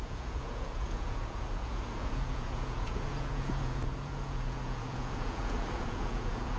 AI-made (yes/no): yes